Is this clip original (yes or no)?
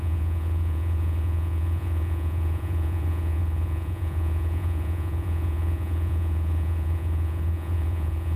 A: no